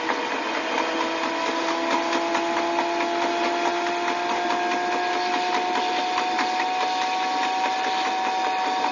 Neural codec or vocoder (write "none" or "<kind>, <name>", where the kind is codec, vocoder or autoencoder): none